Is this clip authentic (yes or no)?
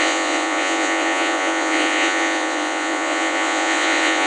no